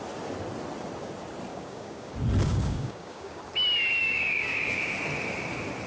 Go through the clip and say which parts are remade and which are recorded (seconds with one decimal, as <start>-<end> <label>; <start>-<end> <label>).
0.0-1.5 recorded; 1.5-2.1 remade; 2.1-2.5 recorded; 2.5-3.4 remade; 3.4-4.0 recorded; 4.0-4.8 remade; 4.8-5.9 recorded

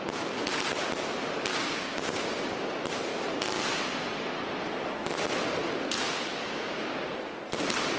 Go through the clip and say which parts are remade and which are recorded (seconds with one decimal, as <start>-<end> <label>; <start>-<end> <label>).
0.0-1.5 recorded; 1.5-2.6 remade; 2.6-6.3 recorded; 6.3-7.0 remade; 7.0-8.0 recorded

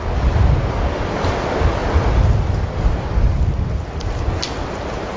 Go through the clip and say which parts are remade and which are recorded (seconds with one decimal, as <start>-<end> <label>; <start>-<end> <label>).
0.0-5.2 recorded

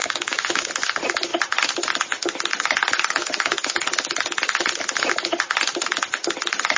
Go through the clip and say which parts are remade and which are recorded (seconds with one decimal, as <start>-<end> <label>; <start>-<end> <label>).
0.0-0.7 remade; 0.7-6.8 recorded

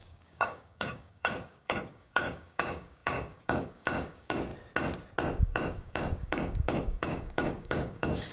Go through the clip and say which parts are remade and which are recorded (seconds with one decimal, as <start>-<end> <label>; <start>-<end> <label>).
0.0-4.5 remade; 4.5-5.4 recorded; 5.4-8.3 remade